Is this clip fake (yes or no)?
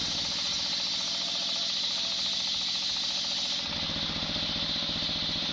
no